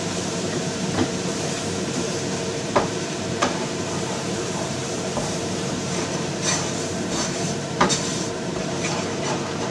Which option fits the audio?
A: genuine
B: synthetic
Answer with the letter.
B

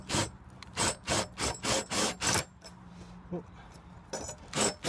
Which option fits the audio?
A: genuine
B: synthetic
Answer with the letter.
A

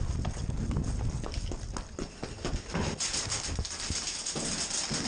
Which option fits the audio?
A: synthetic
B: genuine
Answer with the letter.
B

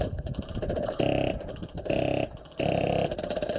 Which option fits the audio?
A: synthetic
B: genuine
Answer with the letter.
A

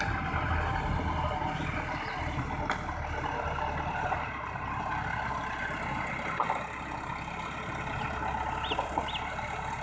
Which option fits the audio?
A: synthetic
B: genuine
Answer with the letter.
B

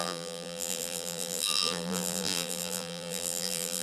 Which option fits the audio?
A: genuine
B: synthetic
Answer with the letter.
B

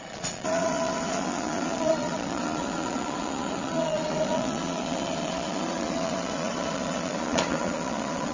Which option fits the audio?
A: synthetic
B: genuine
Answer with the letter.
A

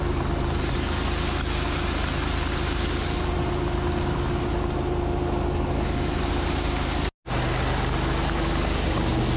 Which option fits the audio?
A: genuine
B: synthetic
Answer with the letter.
A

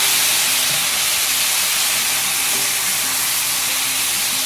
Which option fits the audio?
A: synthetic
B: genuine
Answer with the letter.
B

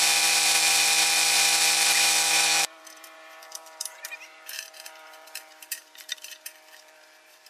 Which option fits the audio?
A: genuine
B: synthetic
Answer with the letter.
B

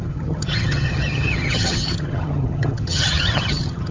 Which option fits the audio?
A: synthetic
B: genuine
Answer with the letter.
A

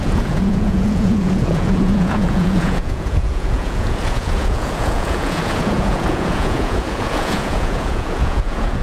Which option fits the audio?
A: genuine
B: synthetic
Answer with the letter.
B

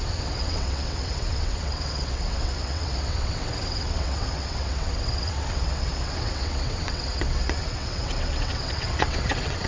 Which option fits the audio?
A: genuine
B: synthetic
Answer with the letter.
B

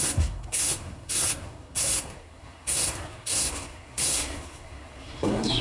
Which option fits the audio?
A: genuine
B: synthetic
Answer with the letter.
B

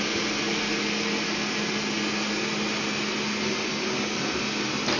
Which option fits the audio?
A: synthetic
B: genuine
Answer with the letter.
B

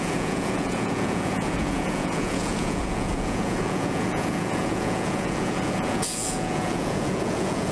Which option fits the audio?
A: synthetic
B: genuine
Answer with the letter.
A